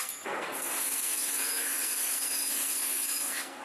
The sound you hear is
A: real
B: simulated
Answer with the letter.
B